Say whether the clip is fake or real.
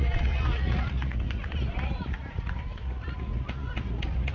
fake